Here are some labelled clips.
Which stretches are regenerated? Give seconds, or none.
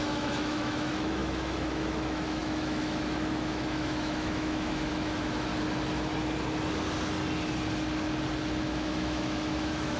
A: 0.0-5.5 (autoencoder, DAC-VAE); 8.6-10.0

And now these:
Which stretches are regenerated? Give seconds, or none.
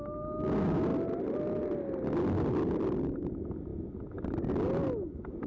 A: none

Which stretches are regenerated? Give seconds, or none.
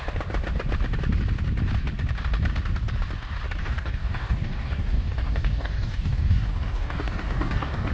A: 3.6-7.9 (codec, DAC)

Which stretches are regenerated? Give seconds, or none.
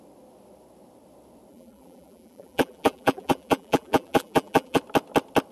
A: 1.5-4.8 (vocoder, BigVGAN v2)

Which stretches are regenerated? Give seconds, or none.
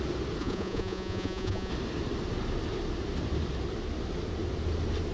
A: 0.4-1.7 (vocoder, Vocos)